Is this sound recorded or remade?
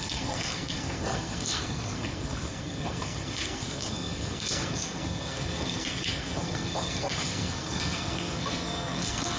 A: remade